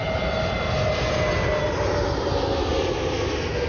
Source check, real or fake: real